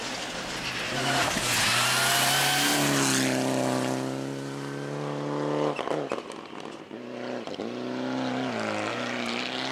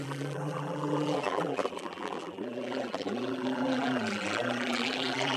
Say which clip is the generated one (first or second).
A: second